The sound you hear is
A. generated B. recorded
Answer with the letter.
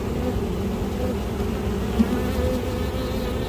B